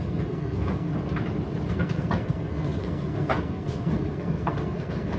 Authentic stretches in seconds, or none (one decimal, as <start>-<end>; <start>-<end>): 0.9-1.7